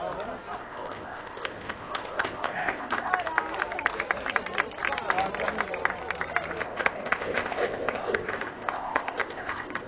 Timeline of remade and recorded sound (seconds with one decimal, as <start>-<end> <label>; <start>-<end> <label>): 0.0-0.6 recorded; 0.6-3.1 remade; 3.1-6.6 recorded; 6.6-9.9 remade